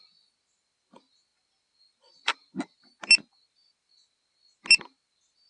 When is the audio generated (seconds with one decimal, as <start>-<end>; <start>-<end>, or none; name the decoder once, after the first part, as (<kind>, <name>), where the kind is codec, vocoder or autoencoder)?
none